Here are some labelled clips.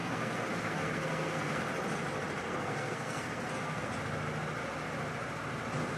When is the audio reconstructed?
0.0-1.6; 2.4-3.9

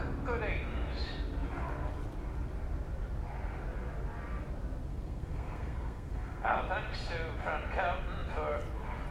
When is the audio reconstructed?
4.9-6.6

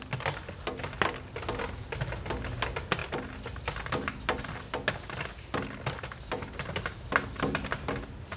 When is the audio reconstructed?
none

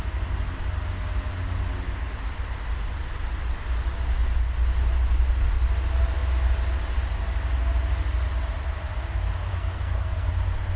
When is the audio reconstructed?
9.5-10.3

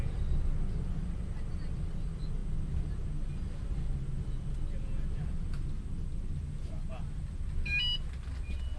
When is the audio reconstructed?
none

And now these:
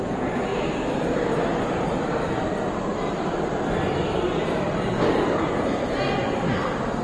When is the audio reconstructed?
none

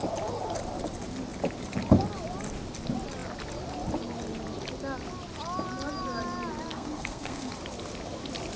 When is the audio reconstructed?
6.7-7.5